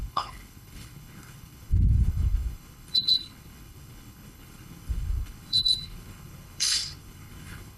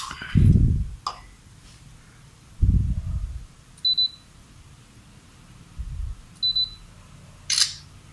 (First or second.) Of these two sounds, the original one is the second